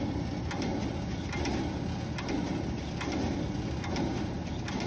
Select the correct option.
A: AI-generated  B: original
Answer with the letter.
B